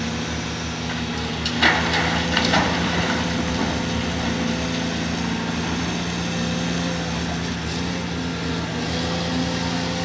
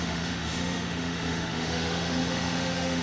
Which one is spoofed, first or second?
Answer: second